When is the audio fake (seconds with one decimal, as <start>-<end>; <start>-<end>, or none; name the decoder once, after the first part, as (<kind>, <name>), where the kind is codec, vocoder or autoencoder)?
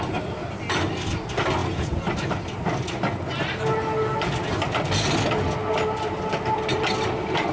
none